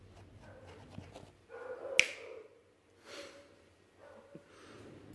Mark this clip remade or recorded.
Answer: recorded